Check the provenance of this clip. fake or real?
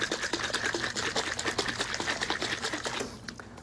real